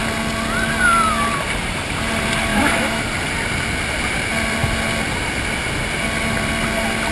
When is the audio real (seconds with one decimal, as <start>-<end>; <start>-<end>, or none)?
0.0-2.5; 3.0-7.1